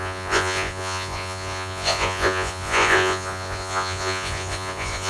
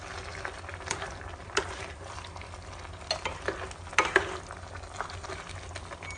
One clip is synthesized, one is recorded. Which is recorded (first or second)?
second